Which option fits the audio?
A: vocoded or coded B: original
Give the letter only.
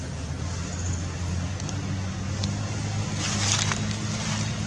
B